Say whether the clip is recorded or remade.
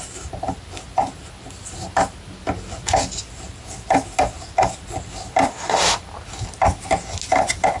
recorded